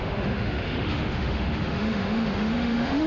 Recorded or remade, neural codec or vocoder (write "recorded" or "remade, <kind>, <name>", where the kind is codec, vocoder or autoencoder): remade, autoencoder, DAC-VAE